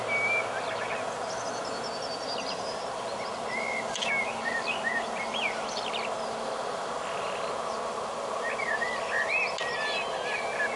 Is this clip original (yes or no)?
yes